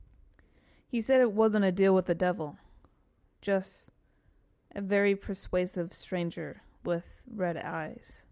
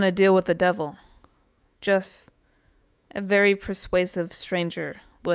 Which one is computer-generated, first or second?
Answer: second